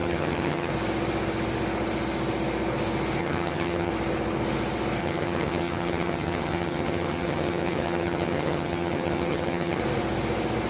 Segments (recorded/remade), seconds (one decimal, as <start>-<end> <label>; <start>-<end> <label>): 0.0-0.7 remade; 0.7-3.2 recorded; 3.2-3.9 remade; 3.9-5.0 recorded; 5.0-9.8 remade; 9.8-10.7 recorded